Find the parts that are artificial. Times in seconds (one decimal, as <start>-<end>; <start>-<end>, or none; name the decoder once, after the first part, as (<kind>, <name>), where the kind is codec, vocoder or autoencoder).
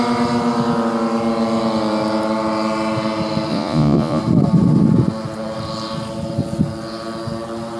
3.5-4.2 (vocoder, Vocos)